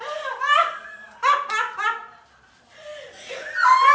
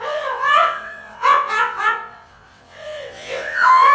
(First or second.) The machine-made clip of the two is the second